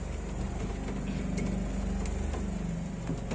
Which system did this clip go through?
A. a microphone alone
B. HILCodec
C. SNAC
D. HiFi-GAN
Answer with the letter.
A